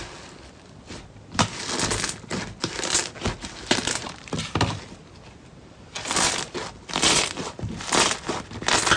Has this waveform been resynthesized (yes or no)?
no